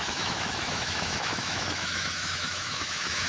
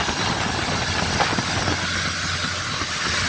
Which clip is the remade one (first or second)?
first